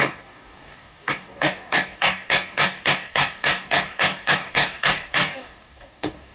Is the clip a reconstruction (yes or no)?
yes